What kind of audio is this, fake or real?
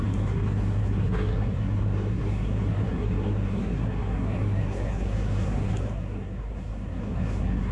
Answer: fake